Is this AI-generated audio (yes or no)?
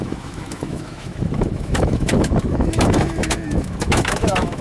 yes